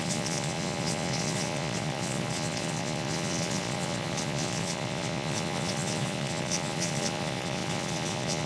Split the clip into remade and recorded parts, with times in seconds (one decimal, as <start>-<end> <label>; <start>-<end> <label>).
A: 0.0-8.5 remade